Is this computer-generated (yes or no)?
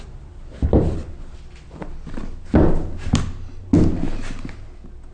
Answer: no